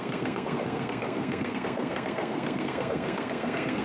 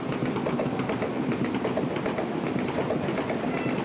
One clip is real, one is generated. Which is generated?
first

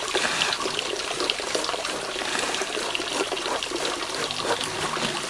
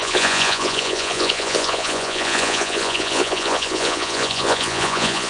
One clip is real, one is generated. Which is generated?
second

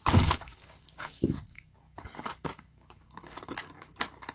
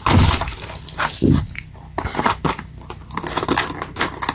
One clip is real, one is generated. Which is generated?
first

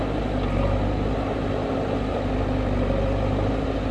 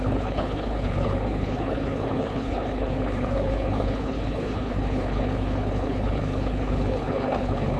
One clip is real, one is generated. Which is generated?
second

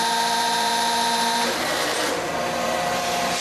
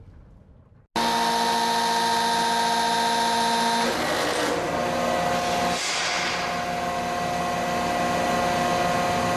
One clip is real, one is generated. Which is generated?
first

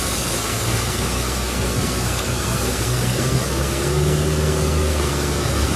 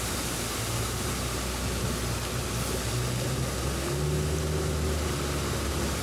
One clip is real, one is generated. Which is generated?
first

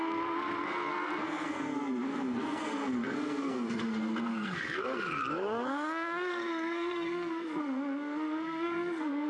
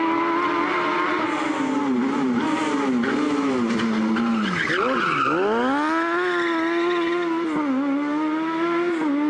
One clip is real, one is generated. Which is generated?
first